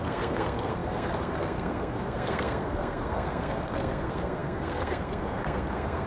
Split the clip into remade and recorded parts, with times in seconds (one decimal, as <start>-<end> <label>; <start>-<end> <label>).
0.0-6.1 remade